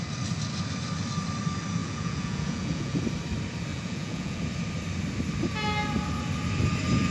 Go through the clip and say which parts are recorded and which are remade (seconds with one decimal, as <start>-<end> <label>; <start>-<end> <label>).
0.0-1.8 recorded; 1.8-3.0 remade; 3.0-3.7 recorded; 3.7-4.4 remade; 4.4-7.1 recorded